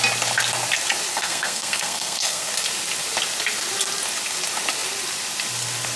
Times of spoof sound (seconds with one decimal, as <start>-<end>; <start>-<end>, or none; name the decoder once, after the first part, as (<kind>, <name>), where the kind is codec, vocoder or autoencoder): 1.1-2.5 (codec, SNAC)